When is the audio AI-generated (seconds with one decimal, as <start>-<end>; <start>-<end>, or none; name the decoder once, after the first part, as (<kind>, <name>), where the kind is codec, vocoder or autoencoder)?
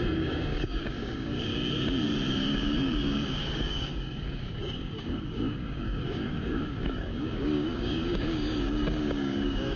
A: 0.0-1.5 (codec, DAC); 2.3-9.8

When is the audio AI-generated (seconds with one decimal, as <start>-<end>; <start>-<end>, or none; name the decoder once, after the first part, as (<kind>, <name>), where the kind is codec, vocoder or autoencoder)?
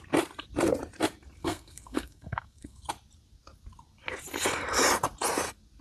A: 1.4-2.9 (codec, SNAC)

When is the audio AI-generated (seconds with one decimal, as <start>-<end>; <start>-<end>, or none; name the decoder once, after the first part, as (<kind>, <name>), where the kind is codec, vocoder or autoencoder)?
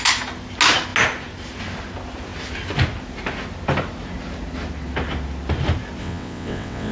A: 6.0-6.9 (vocoder, WaveNeXt)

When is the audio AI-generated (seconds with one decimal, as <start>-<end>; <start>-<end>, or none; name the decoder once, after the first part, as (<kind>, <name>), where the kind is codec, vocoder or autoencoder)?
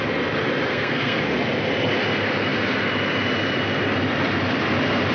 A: 0.7-1.2 (codec, SNAC)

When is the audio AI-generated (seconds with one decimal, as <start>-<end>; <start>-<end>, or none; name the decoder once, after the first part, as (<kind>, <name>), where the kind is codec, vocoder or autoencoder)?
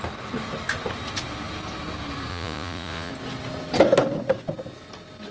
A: 2.3-3.1 (vocoder, Vocos)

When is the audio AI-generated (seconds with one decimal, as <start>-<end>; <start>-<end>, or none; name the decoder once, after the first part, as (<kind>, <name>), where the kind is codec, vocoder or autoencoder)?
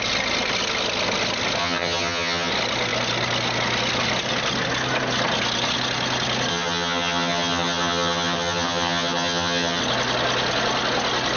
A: 1.6-2.5 (vocoder, HiFi-GAN); 6.5-9.8